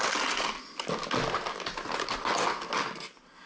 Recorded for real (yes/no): yes